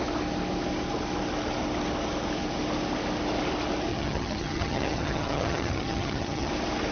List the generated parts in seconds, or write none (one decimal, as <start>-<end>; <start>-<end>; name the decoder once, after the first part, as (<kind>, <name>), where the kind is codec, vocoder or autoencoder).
3.9-6.5 (vocoder, HiFi-GAN)